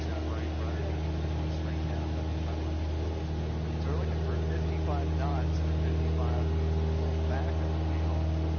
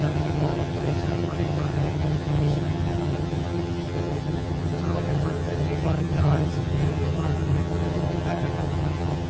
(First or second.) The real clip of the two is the first